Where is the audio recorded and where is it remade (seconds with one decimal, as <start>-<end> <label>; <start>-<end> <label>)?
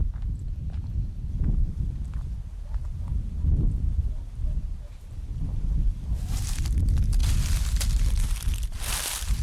0.0-9.4 recorded